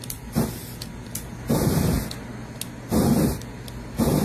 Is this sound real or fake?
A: real